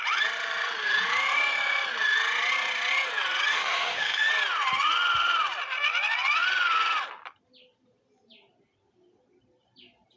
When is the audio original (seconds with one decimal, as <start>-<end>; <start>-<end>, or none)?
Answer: 0.0-3.5; 4.3-10.2